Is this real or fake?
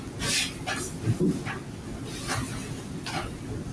real